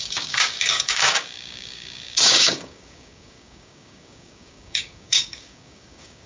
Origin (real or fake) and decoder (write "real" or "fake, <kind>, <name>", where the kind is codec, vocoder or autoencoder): fake, codec, DAC